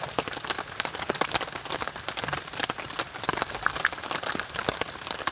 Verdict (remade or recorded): recorded